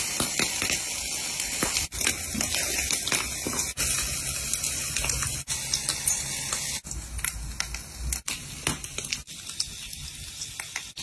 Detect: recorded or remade recorded